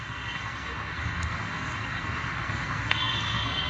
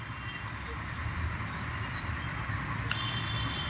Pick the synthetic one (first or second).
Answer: first